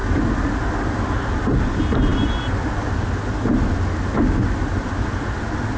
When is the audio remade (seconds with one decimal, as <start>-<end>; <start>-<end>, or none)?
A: none